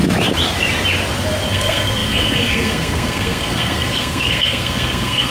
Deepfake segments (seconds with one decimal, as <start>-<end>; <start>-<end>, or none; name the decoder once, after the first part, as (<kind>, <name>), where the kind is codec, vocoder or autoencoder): 1.5-5.3 (codec, SNAC)